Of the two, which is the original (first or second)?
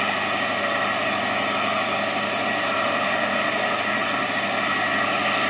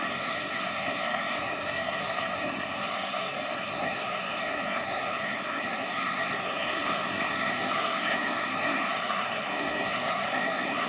first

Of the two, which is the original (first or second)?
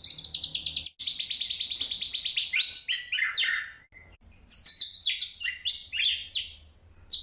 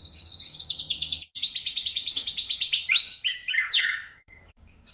first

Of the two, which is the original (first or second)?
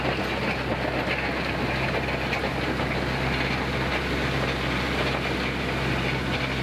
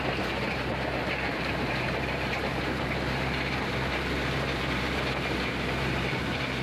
first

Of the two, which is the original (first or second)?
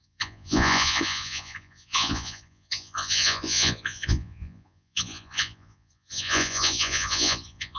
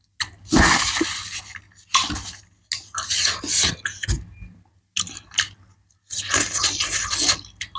second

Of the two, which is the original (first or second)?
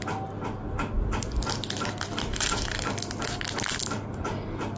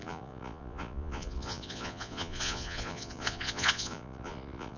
first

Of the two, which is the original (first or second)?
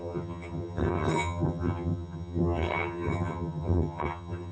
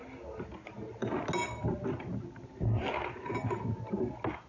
second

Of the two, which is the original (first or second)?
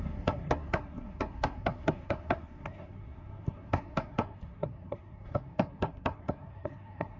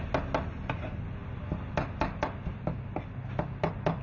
second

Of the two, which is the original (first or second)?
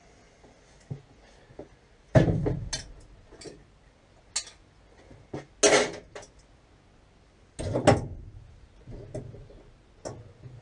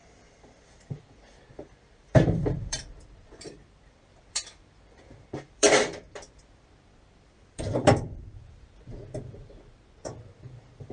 first